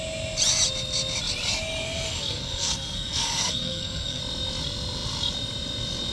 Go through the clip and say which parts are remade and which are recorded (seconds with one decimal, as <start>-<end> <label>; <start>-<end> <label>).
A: 0.0-1.8 recorded; 1.8-4.2 remade; 4.2-6.1 recorded